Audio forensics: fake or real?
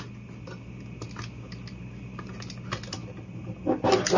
real